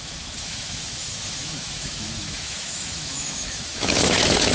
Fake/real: fake